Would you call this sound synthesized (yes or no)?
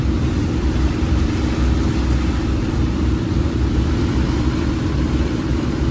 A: yes